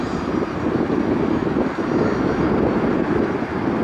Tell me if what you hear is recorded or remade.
recorded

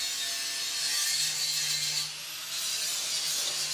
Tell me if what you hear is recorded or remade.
recorded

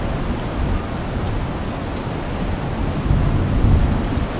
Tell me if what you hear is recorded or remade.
recorded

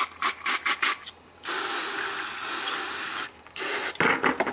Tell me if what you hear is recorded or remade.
recorded